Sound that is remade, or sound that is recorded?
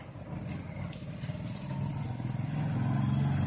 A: recorded